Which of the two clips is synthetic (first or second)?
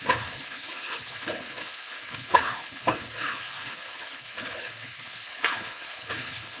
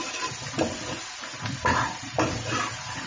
first